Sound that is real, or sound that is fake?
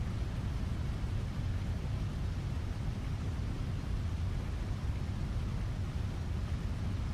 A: real